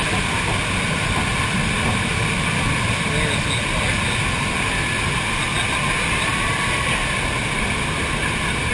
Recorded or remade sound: recorded